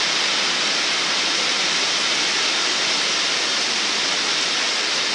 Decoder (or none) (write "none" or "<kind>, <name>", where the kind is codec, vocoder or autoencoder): none